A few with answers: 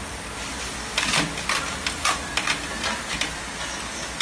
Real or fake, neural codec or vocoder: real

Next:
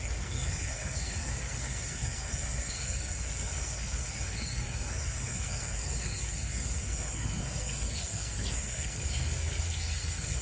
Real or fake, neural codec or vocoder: fake, codec, SNAC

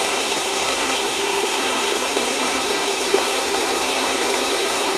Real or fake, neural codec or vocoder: fake, codec, SNAC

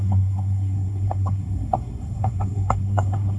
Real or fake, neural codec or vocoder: fake, codec, SNAC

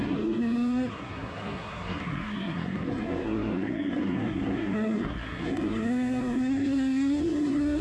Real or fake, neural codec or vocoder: fake, codec, SNAC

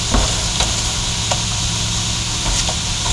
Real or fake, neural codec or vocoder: real